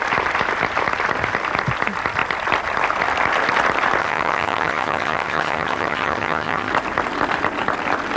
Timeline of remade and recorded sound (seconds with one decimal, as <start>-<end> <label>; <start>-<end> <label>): 0.0-4.0 recorded; 4.0-6.7 remade; 6.7-8.2 recorded